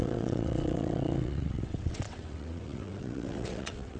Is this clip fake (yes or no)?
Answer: yes